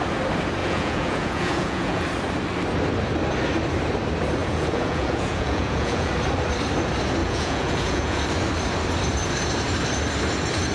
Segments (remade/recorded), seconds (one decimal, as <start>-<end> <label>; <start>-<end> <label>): 0.0-0.6 recorded; 0.6-2.0 remade; 2.0-4.4 recorded; 4.4-6.1 remade; 6.1-7.2 recorded; 7.2-8.2 remade; 8.2-10.7 recorded